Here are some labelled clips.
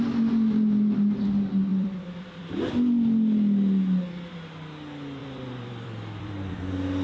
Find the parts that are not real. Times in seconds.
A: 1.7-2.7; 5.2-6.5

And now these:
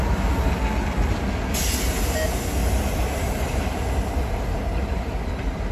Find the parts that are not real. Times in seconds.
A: 2.6-5.0